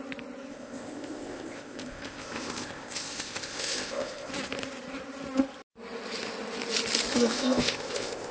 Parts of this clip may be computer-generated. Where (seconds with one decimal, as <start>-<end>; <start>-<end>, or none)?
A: 0.5-4.3; 7.1-8.3